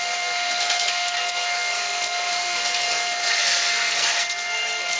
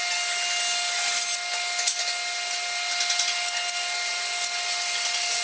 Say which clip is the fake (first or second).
first